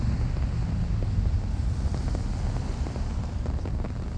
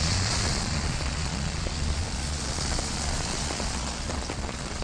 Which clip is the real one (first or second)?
first